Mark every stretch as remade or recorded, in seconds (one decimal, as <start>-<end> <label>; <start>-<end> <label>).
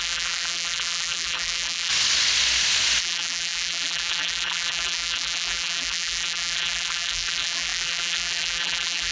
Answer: 0.0-1.9 remade; 1.9-3.0 recorded; 3.0-9.1 remade